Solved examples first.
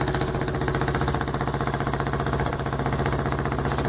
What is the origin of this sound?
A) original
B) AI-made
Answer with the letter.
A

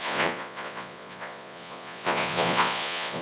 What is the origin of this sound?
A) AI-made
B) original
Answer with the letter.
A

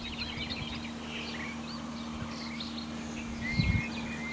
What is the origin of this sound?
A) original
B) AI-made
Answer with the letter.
A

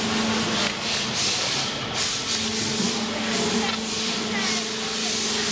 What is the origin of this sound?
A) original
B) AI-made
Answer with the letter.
A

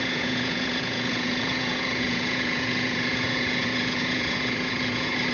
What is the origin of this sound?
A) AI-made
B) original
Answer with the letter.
A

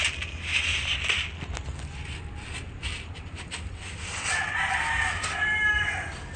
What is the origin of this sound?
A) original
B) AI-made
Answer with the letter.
A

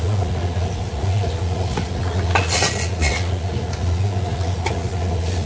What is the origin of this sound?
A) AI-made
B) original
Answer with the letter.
A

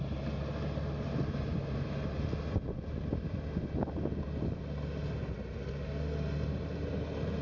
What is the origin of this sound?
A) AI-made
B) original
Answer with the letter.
B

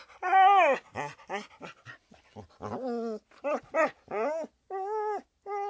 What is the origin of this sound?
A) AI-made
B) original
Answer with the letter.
B